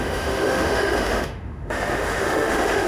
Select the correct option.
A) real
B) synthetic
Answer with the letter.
B